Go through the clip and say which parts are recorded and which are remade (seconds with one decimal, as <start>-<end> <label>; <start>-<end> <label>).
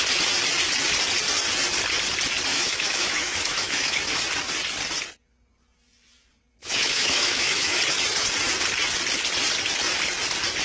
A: 0.0-2.5 recorded; 2.5-4.0 remade; 4.0-6.6 recorded; 6.6-7.8 remade; 7.8-10.6 recorded